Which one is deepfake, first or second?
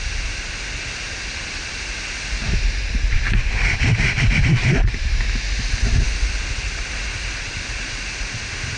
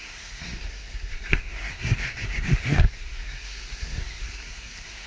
second